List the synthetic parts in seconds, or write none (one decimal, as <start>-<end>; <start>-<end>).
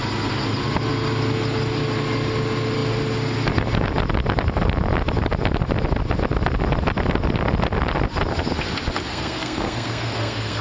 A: 9.1-10.6